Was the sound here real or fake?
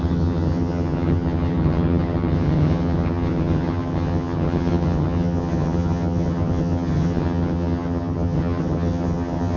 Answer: fake